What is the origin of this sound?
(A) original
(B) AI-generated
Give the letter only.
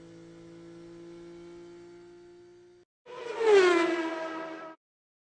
A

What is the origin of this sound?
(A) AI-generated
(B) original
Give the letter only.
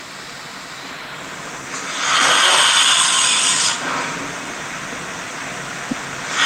B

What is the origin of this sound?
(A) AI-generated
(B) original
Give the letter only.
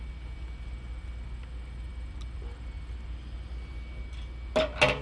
B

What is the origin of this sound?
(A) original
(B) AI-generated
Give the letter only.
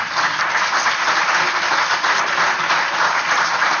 A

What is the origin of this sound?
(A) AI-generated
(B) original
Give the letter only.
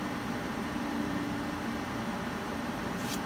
A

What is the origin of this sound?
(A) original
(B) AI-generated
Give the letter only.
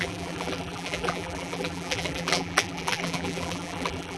B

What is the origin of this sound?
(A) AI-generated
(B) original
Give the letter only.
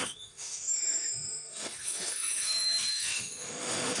A